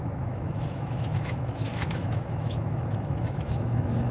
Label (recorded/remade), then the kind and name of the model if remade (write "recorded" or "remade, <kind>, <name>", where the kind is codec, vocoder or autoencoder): remade, autoencoder, DAC-VAE